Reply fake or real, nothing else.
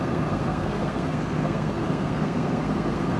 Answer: fake